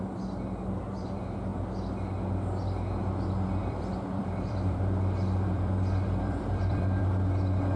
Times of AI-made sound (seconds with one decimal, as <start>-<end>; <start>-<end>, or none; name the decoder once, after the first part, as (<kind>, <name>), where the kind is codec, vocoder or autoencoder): 3.6-7.0 (vocoder, BigVGAN v2)